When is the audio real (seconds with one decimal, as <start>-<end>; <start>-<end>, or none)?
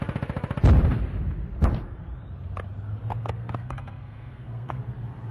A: 0.0-3.2; 4.8-5.3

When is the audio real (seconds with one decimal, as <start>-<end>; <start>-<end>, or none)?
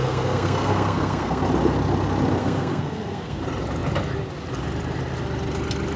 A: 1.4-2.4; 3.4-6.0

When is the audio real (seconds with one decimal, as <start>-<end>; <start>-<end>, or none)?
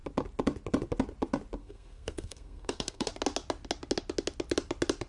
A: 0.0-1.6; 3.1-5.1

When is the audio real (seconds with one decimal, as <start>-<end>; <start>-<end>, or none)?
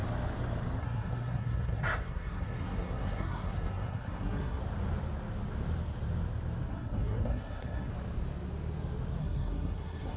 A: 0.0-0.8; 4.6-6.7; 7.9-9.2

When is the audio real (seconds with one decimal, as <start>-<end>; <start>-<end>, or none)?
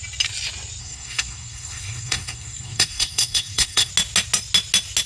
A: 0.0-0.8; 3.9-5.1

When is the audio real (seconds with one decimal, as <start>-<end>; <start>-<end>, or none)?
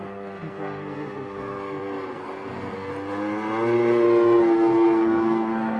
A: 2.9-4.4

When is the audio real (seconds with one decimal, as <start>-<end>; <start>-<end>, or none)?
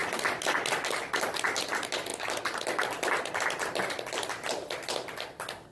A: 0.0-5.7